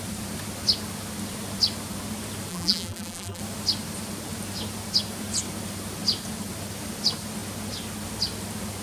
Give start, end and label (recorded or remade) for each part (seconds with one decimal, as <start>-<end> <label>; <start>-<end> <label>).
0.0-2.5 recorded; 2.5-3.4 remade; 3.4-8.8 recorded